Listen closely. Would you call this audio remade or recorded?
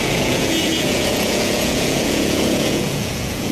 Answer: remade